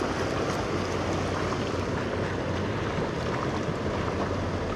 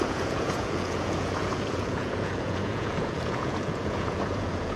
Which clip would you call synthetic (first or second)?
second